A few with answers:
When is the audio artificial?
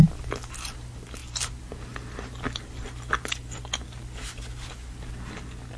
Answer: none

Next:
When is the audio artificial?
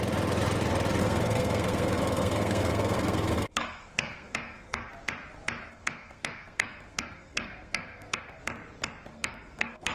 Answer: 1.0-4.9 (codec, SNAC); 5.7-8.4; 9.1-9.9